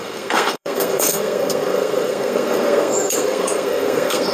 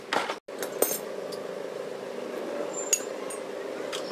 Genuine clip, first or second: second